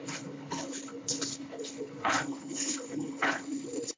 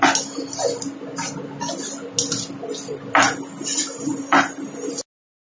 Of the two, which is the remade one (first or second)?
first